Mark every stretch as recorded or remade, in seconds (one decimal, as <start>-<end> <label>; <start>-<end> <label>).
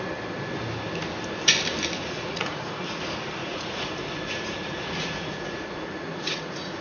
0.0-2.0 recorded; 2.0-2.8 remade; 2.8-3.4 recorded; 3.4-6.8 remade